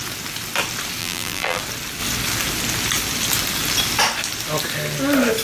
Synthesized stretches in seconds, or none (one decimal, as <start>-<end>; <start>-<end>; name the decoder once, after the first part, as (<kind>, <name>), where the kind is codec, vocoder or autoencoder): 1.0-1.6 (vocoder, BigVGAN v2)